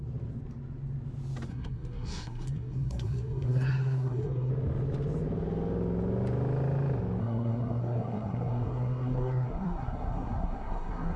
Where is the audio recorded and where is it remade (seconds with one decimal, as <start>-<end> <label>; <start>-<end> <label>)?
0.0-1.5 recorded; 1.5-4.5 remade; 4.5-7.2 recorded; 7.2-11.2 remade